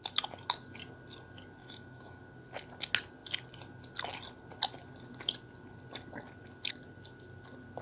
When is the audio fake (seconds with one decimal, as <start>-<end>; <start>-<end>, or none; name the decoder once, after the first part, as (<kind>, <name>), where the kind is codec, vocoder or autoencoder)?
1.6-2.2 (autoencoder, DAC-VAE)